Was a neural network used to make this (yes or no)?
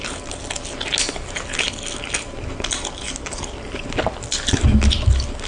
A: no